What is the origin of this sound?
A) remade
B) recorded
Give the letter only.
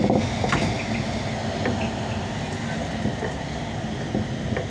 B